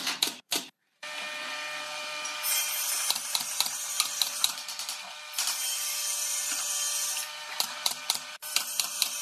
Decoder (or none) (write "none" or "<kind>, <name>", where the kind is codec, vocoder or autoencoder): vocoder, BigVGAN v2